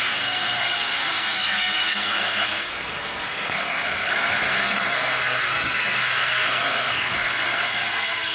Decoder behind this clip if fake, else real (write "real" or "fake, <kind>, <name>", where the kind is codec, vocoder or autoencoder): fake, codec, SNAC